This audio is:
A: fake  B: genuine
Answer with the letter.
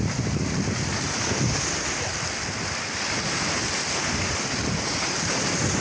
B